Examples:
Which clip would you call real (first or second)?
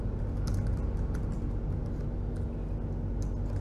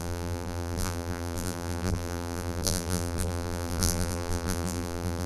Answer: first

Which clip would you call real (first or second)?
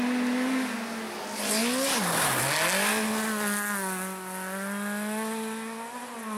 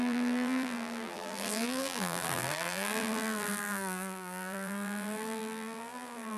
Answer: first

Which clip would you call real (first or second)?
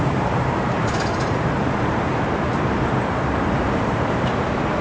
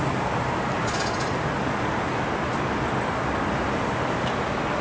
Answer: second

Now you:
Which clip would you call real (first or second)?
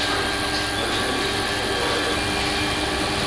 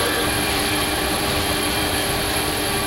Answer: first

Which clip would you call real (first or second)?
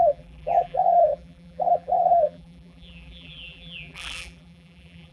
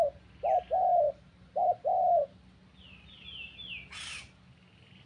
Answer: second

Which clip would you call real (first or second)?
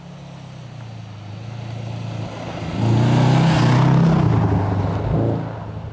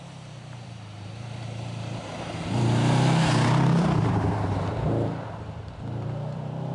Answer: first